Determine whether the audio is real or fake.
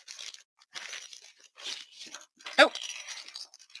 real